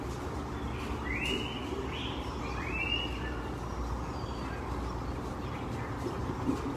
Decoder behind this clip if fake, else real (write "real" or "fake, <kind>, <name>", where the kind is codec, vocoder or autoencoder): real